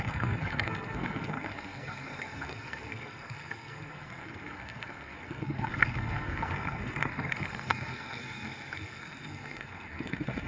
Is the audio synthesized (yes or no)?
yes